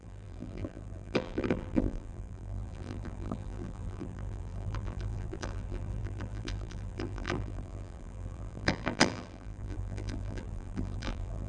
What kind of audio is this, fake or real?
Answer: fake